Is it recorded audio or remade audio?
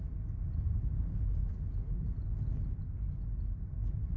recorded